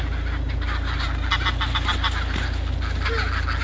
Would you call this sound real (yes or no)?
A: yes